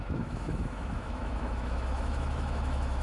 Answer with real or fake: fake